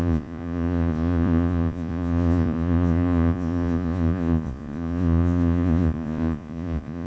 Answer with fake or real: fake